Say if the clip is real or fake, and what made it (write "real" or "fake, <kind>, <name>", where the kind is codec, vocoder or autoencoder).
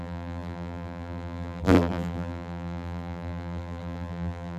fake, vocoder, BigVGAN v2